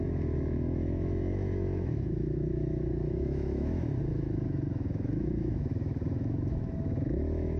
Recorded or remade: remade